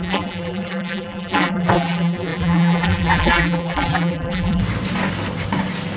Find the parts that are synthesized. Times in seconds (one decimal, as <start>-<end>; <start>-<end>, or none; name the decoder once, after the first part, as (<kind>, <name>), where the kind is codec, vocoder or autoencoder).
0.0-4.6 (vocoder, BigVGAN v2)

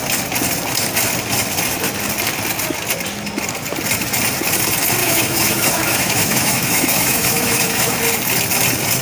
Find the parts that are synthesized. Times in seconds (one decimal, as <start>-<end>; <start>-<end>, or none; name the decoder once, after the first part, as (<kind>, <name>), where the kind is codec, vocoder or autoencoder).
5.0-8.0 (autoencoder, DAC-VAE)

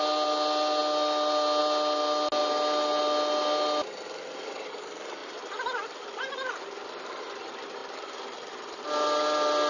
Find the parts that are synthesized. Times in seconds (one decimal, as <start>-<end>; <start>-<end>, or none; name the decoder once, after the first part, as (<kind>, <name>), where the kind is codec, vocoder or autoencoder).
none

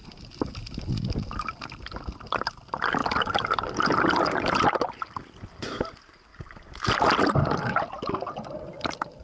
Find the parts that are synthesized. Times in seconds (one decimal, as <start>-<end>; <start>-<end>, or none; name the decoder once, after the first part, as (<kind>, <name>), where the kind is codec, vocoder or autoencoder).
0.0-0.9 (vocoder, BigVGAN v2); 3.0-5.2; 6.3-7.2

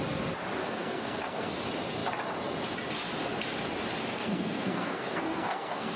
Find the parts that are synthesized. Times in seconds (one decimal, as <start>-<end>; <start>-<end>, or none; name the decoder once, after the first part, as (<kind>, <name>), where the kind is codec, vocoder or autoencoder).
0.6-1.6 (codec, SNAC); 4.1-6.0

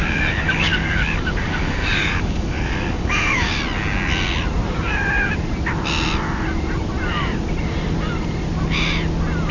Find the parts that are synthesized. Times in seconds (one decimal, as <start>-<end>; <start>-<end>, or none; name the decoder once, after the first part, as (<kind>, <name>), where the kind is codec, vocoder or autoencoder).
0.0-3.6 (codec, DAC)

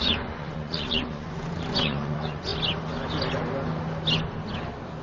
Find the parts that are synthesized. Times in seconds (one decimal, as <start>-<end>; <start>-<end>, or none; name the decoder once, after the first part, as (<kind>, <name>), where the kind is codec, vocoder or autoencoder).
0.0-2.5 (vocoder, Vocos)